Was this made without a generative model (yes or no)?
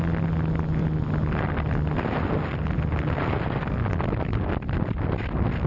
yes